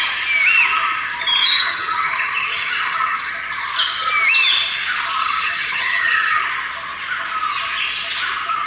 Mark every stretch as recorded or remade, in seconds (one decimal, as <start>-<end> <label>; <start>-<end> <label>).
0.0-1.4 recorded; 1.4-3.3 remade; 3.3-5.2 recorded; 5.2-6.4 remade; 6.4-8.7 recorded